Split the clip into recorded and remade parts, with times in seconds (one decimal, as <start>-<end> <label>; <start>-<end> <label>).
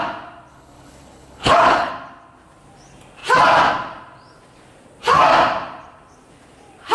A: 0.0-0.5 recorded; 0.5-1.9 remade; 1.9-6.9 recorded